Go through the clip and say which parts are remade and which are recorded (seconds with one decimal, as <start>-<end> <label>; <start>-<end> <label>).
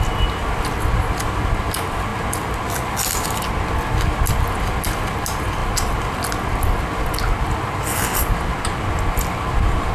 0.0-9.9 recorded